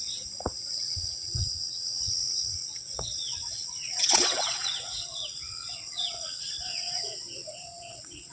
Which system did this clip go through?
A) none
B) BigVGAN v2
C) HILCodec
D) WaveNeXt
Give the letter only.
D